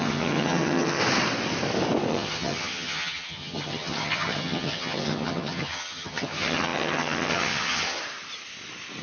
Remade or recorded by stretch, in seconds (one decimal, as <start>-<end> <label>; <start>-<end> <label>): 0.0-1.0 remade; 1.0-2.1 recorded; 2.1-8.0 remade; 8.0-9.0 recorded